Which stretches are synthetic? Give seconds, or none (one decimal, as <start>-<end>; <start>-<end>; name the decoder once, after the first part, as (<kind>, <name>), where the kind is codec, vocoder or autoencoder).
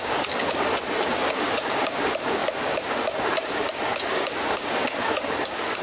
0.0-0.7 (codec, DAC); 1.3-5.8